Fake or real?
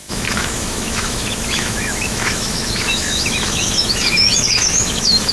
fake